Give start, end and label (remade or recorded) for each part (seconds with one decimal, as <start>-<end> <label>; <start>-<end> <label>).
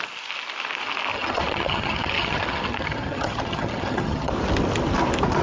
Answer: 0.0-1.1 recorded; 1.1-4.3 remade; 4.3-5.4 recorded